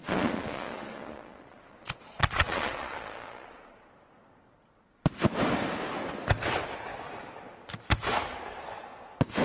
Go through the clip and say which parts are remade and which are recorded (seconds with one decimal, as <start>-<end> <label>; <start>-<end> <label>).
0.0-3.9 remade; 3.9-9.4 recorded